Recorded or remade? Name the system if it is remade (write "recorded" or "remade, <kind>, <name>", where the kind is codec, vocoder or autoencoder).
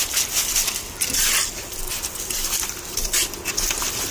remade, vocoder, BigVGAN v2